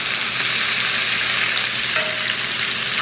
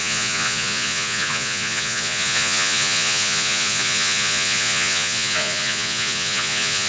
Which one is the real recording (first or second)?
first